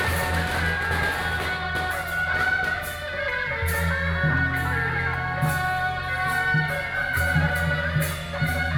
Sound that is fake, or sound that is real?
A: real